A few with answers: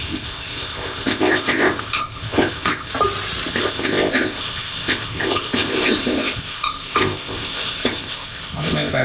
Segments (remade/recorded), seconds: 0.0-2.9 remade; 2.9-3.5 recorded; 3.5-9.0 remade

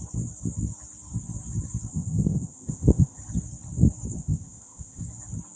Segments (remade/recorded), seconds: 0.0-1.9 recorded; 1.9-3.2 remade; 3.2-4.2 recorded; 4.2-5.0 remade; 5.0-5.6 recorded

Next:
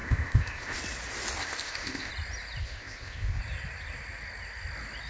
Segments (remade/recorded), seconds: 0.0-0.8 remade; 0.8-1.4 recorded; 1.4-2.1 remade; 2.1-2.6 recorded; 2.6-3.4 remade; 3.4-5.1 recorded

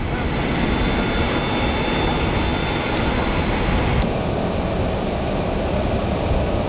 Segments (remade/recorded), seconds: 0.0-6.7 recorded